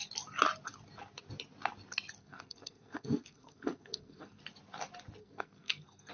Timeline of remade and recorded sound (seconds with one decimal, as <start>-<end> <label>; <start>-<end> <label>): 0.0-2.2 recorded; 2.2-4.4 remade; 4.4-5.2 recorded; 5.2-6.1 remade